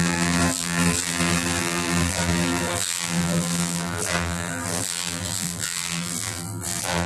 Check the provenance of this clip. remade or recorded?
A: remade